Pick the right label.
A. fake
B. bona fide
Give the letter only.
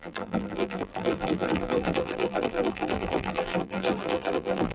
A